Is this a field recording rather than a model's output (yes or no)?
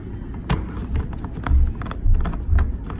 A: yes